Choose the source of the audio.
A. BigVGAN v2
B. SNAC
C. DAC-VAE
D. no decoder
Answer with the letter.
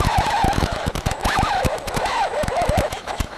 C